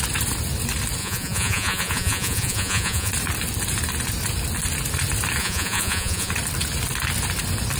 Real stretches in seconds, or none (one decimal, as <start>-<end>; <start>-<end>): 0.0-1.0; 3.1-5.4; 6.3-7.8